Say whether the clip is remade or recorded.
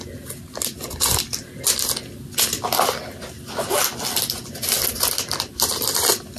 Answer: recorded